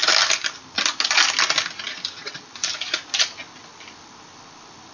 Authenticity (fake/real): real